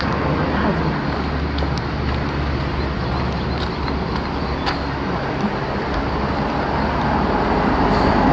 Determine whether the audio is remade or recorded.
recorded